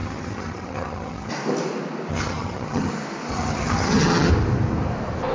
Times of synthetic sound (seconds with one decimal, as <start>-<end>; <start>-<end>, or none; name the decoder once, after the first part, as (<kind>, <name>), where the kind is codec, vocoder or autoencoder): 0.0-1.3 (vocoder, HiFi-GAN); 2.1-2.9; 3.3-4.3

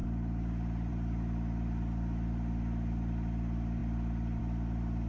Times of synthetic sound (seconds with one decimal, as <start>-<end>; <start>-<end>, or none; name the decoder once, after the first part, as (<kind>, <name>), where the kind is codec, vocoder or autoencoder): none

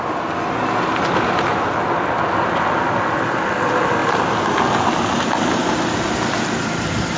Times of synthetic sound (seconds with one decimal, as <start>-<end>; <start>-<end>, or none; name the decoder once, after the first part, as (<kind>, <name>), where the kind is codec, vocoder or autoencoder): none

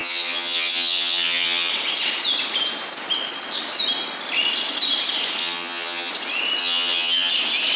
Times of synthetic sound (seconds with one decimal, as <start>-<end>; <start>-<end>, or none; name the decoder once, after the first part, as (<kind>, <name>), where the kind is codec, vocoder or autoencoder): 0.0-1.7 (vocoder, HiFi-GAN); 5.4-6.1; 6.6-7.3

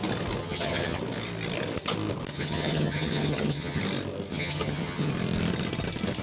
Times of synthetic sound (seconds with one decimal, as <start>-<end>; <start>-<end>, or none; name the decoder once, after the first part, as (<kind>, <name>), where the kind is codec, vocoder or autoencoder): 0.4-1.0 (vocoder, HiFi-GAN); 2.3-3.8; 4.3-5.1

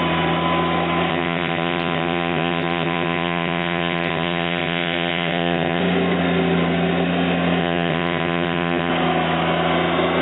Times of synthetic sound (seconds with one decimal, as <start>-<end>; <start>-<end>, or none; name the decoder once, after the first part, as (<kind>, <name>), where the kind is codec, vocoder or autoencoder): 1.1-5.8 (vocoder, HiFi-GAN); 7.6-8.9

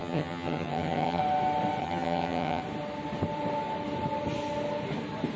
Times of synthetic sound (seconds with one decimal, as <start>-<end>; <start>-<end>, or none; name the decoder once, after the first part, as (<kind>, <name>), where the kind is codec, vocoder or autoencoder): 0.0-1.2 (vocoder, HiFi-GAN); 1.8-2.6

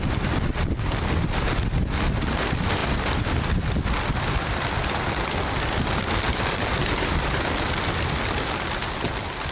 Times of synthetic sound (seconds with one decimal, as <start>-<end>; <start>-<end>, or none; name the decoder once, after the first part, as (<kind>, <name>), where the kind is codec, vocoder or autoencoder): none